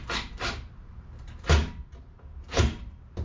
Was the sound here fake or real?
real